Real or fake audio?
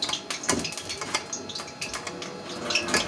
real